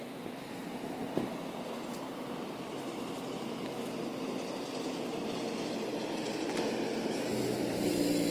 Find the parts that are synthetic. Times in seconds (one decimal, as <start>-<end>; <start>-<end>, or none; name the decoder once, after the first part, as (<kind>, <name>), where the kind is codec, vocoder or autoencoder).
none